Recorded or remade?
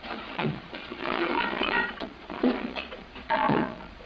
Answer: remade